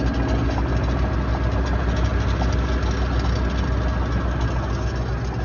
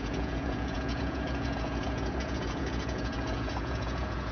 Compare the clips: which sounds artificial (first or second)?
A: second